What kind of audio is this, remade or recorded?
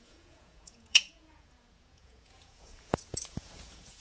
remade